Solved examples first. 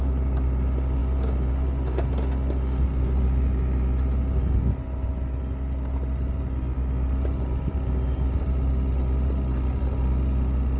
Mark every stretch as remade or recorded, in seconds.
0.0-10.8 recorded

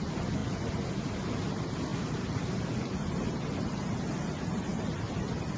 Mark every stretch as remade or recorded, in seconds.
0.0-1.9 recorded; 1.9-5.0 remade; 5.0-5.6 recorded